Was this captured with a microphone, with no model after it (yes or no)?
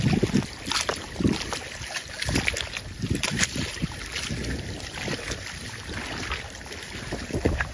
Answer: yes